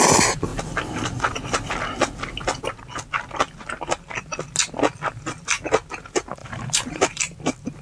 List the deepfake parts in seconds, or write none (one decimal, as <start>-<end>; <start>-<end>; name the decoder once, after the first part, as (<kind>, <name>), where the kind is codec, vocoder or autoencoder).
6.4-7.2 (vocoder, BigVGAN v2)

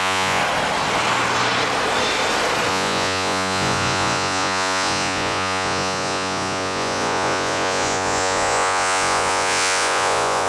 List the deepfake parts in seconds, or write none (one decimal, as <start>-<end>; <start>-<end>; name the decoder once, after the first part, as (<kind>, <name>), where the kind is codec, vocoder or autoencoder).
0.0-0.4 (vocoder, Vocos); 2.7-10.5

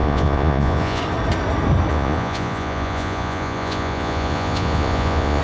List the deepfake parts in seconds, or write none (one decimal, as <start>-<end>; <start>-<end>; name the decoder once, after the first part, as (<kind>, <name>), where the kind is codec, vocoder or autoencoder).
0.0-1.0 (vocoder, Vocos); 1.9-5.4

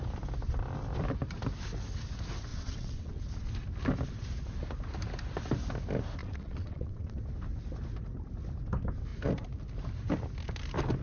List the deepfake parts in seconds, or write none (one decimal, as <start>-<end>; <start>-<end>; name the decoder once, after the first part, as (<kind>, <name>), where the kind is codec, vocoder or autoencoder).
2.5-3.2 (vocoder, WaveNeXt); 6.2-7.2

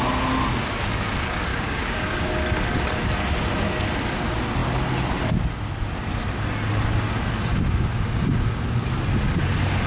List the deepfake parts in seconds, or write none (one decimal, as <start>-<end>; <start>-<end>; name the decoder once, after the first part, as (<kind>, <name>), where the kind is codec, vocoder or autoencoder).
1.5-2.3 (codec, DAC)

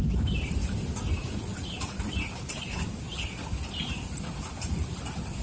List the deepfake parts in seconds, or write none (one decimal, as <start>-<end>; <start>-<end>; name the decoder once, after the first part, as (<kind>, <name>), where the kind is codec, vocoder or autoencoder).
none

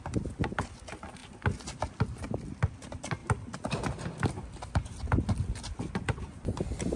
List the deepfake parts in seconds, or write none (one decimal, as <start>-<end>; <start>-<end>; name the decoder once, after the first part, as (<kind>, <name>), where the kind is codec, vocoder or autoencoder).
none

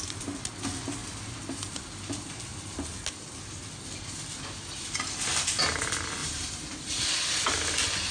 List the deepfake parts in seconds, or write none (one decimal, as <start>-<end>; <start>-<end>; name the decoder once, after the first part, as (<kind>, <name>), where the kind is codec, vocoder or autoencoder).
1.0-1.8 (vocoder, BigVGAN v2); 6.2-6.9